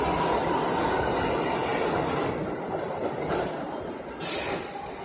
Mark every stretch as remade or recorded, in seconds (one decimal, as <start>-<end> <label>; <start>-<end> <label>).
0.0-5.0 recorded